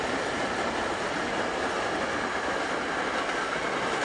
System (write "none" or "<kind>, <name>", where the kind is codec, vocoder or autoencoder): none